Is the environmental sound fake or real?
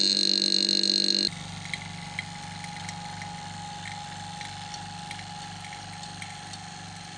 real